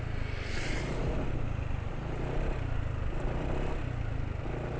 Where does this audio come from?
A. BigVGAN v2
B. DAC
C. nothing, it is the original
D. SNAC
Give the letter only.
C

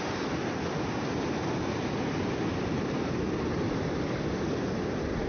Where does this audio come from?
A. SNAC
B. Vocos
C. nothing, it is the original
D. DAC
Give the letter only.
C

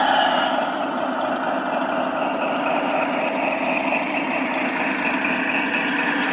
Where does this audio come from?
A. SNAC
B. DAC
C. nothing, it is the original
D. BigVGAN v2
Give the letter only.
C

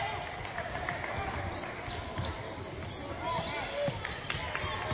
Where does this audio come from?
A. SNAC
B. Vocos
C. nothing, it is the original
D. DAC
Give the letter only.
C